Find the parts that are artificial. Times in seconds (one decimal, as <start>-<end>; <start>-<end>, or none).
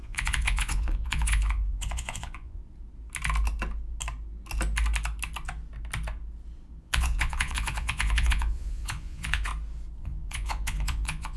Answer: 0.0-2.6; 6.8-9.5; 10.0-11.4